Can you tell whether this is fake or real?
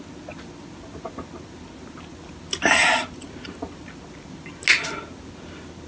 real